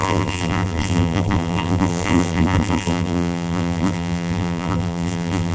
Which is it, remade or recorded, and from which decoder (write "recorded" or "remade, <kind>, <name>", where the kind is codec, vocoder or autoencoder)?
remade, vocoder, BigVGAN v2